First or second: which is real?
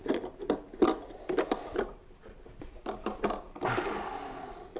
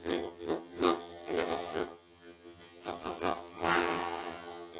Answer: first